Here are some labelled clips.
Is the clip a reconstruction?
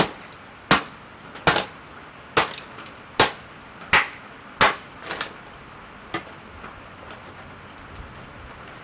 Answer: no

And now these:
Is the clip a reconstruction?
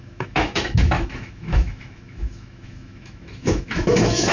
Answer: yes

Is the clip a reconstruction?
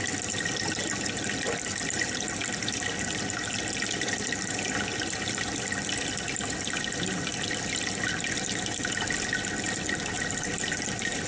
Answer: no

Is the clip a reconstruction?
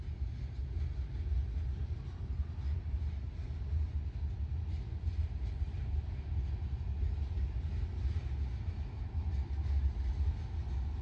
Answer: no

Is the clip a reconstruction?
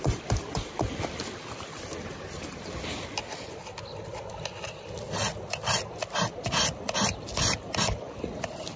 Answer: no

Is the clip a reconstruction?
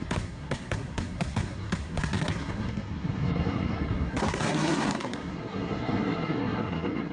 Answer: yes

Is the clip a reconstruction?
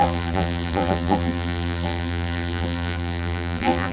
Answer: yes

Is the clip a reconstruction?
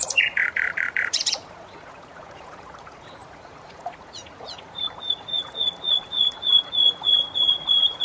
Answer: yes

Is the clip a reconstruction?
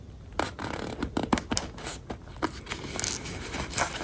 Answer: no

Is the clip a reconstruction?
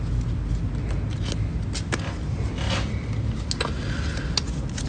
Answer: no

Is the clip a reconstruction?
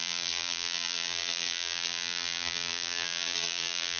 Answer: yes